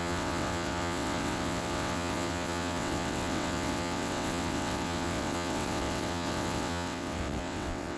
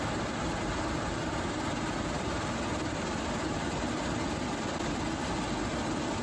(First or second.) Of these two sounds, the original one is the second